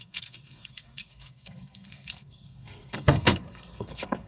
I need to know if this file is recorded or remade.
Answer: remade